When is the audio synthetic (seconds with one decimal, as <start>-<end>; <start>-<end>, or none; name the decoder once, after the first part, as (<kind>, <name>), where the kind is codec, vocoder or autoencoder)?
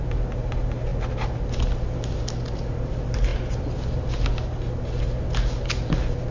none